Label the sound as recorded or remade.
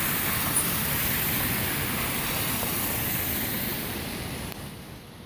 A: recorded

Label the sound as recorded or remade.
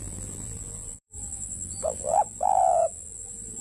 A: remade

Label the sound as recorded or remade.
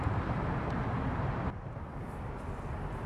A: recorded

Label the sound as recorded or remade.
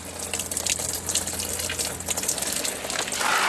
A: recorded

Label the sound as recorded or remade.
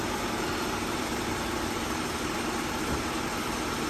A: remade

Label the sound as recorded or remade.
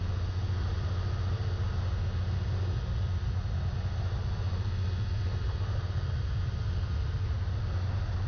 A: recorded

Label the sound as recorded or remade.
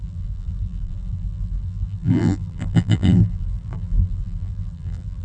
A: remade